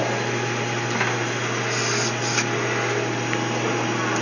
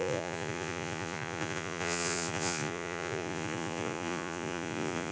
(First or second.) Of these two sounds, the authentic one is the first